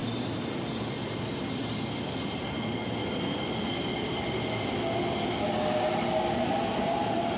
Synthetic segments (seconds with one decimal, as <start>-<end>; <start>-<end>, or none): 0.0-0.6; 1.0-1.7; 3.0-3.5